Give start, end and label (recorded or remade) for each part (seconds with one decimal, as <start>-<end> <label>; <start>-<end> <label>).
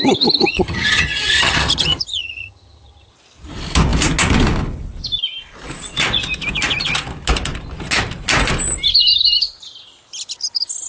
0.0-0.5 recorded; 0.5-3.1 remade; 3.1-10.9 recorded